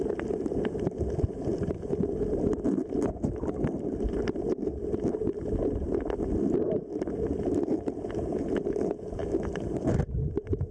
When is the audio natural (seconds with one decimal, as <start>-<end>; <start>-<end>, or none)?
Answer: 0.0-10.7